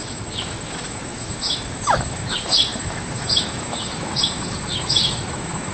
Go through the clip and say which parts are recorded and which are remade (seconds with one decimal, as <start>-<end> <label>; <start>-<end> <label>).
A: 0.0-5.7 remade